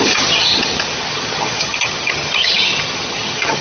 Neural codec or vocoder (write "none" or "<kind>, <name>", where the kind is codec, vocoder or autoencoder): vocoder, HiFi-GAN